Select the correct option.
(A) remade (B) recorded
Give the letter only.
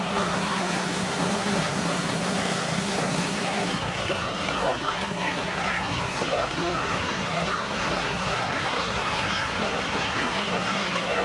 A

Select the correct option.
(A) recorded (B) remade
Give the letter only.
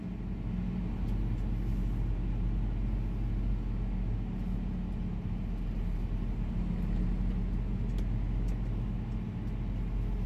A